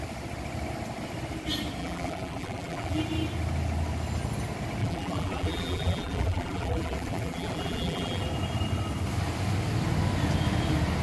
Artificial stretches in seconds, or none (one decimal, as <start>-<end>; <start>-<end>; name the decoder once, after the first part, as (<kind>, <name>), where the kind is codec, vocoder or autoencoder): 1.8-3.0 (vocoder, BigVGAN v2); 4.8-8.2